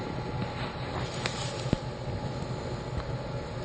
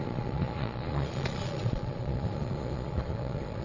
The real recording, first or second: first